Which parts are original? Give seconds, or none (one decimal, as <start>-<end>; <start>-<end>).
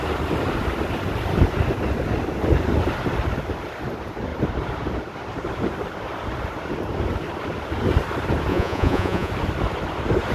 0.0-8.5; 9.3-10.3